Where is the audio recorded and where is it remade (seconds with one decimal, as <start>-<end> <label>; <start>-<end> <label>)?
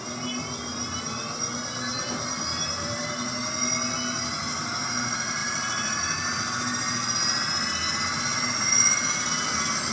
0.0-9.9 recorded